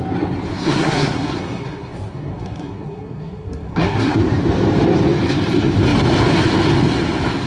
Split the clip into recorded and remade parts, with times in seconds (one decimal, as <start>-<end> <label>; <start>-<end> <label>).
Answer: 0.0-0.5 recorded; 0.5-4.2 remade; 4.2-7.5 recorded